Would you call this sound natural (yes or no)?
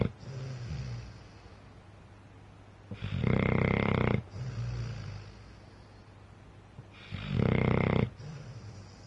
yes